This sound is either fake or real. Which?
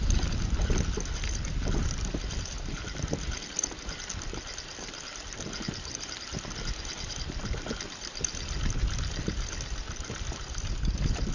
real